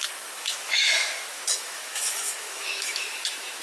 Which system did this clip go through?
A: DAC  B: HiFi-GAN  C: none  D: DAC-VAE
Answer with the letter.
D